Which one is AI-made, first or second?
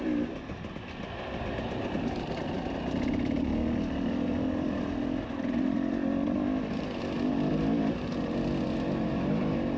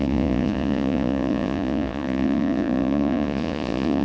second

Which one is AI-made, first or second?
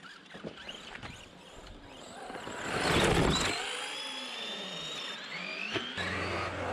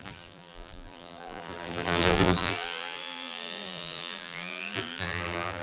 second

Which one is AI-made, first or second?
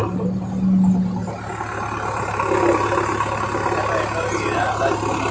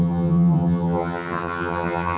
second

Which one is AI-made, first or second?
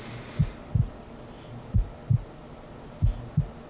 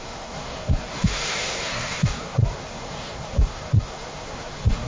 second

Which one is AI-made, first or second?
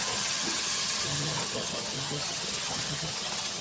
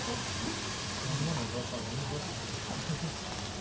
first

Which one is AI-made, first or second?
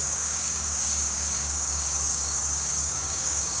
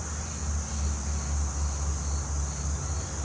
first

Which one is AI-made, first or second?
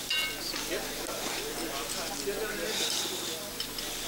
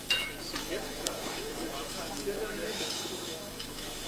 second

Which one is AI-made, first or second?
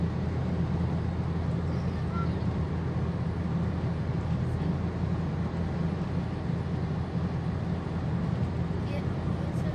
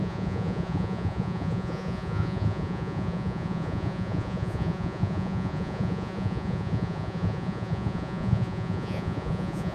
second